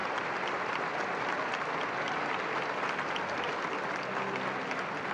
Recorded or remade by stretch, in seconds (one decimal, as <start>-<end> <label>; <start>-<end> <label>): 0.0-5.1 recorded